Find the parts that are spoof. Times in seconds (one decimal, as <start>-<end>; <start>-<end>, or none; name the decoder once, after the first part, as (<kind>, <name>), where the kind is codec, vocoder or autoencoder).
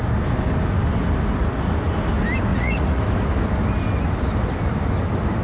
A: 2.5-3.0 (vocoder, Vocos)